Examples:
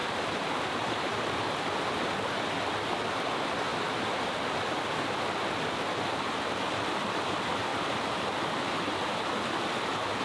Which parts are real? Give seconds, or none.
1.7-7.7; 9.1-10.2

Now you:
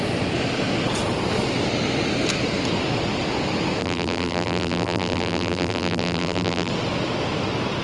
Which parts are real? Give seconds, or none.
0.0-3.8; 6.7-7.8

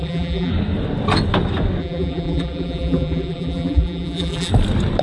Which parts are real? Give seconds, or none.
0.5-1.8; 4.5-5.0

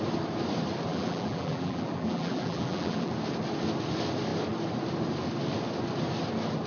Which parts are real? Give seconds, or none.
0.0-0.9; 3.1-6.7